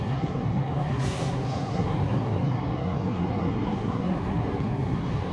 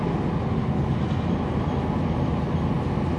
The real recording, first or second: second